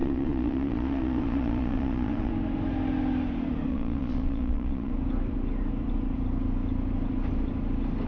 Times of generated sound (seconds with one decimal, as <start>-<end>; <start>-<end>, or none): 0.0-2.3; 3.7-4.9